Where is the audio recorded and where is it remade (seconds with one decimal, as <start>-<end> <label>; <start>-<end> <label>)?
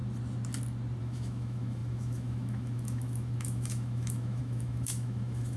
0.0-1.0 recorded; 1.0-5.6 remade